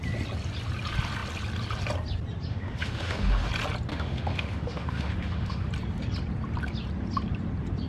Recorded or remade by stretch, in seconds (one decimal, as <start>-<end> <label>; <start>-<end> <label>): 0.0-2.5 recorded; 2.5-3.5 remade; 3.5-3.9 recorded; 3.9-5.7 remade; 5.7-7.9 recorded